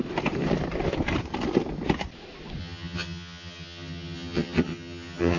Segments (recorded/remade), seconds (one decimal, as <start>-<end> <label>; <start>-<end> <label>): 0.0-2.6 recorded; 2.6-5.4 remade